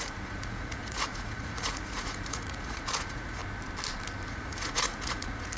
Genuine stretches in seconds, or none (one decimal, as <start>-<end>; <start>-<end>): 3.4-4.3